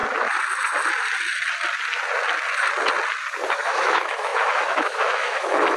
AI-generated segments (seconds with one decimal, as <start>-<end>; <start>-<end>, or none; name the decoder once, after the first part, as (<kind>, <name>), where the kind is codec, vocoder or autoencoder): 3.5-5.8 (autoencoder, DAC-VAE)